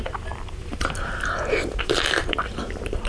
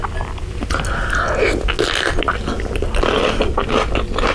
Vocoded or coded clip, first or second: first